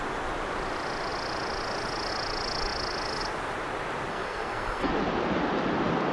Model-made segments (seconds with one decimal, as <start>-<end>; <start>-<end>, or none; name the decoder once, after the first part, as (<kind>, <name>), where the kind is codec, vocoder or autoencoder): 4.1-4.9 (codec, SNAC)